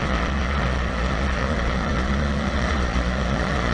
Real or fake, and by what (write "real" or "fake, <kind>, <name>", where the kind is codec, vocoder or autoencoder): fake, vocoder, Vocos